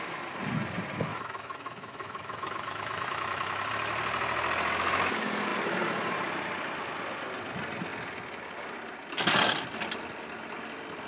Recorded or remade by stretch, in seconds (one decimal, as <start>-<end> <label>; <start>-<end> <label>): 0.0-1.1 recorded; 1.1-3.7 remade; 3.7-11.1 recorded

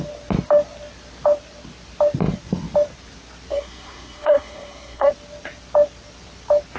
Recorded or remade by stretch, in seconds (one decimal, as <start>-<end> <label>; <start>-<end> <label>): 0.0-3.5 recorded; 3.5-5.1 remade; 5.1-6.8 recorded

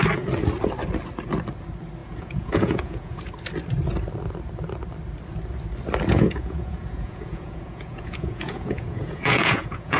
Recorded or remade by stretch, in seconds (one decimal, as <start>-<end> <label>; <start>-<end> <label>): 0.0-2.0 recorded; 2.0-3.3 remade; 3.3-6.1 recorded; 6.1-10.0 remade

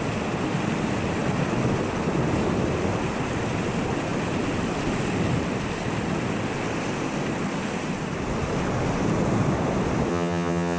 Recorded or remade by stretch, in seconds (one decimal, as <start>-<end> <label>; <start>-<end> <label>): 0.0-10.1 recorded; 10.1-10.8 remade